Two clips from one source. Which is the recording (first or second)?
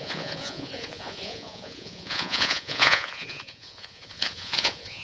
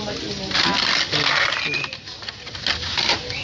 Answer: second